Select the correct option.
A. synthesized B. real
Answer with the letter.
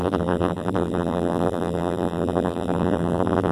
A